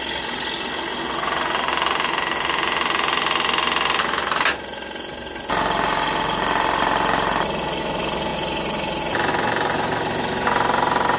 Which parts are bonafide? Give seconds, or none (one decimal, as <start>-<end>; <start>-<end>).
0.0-11.2

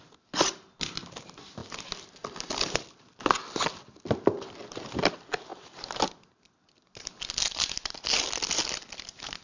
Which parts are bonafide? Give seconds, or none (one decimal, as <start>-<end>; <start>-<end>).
0.0-9.4

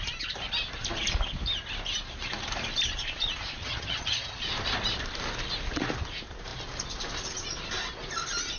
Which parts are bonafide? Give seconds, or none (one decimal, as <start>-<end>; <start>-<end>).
0.0-3.6; 4.4-8.6